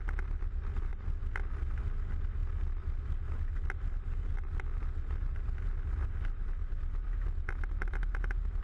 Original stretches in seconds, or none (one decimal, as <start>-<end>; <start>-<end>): 0.0-8.6